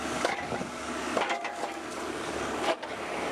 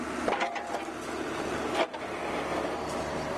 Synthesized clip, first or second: first